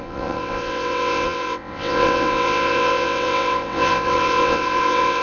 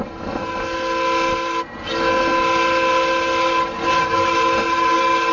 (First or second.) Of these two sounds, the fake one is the first